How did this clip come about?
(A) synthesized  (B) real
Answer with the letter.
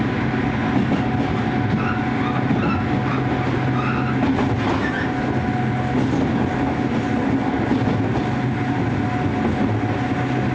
B